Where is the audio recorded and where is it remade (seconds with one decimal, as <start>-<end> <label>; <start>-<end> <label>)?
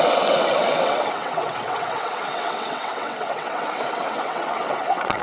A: 0.0-5.2 remade